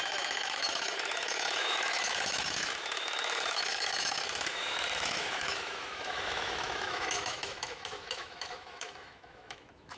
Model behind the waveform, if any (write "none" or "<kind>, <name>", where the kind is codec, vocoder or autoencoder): autoencoder, DAC-VAE